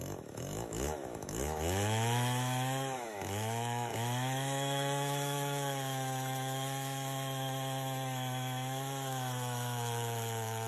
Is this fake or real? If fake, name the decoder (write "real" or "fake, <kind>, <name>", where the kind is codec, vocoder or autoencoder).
fake, autoencoder, DAC-VAE